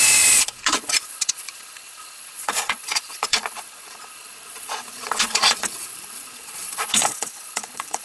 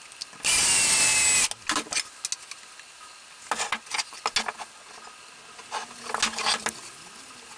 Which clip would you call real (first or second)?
second